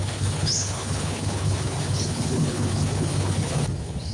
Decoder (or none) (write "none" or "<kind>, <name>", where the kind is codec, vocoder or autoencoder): codec, HILCodec